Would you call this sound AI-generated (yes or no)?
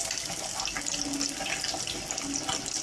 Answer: no